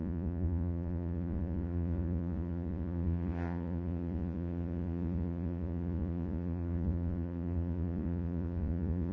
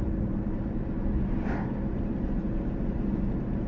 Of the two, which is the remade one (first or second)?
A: first